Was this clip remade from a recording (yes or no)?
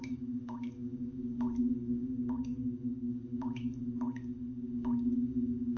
yes